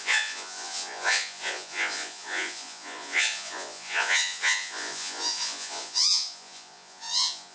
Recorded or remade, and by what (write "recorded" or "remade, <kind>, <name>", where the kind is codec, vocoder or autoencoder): remade, vocoder, Vocos